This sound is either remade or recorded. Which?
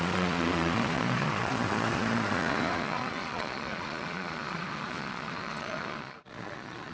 remade